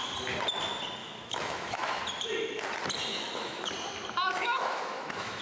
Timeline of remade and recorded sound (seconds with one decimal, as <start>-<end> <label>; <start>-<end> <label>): 0.0-1.0 recorded; 1.0-2.0 remade; 2.0-3.1 recorded; 3.1-3.7 remade; 3.7-4.4 recorded; 4.4-5.4 remade